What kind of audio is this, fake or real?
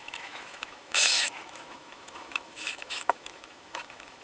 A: fake